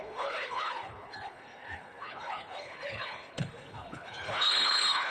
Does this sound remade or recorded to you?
remade